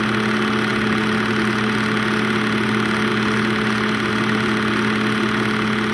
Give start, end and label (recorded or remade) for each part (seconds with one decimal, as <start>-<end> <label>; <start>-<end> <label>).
0.0-5.9 recorded